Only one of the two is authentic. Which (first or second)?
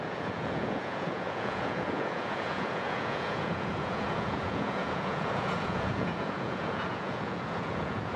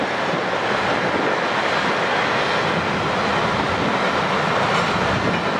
second